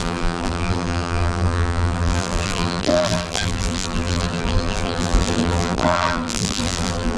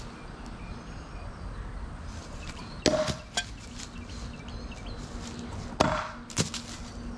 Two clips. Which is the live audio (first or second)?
second